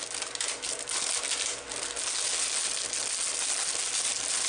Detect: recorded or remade recorded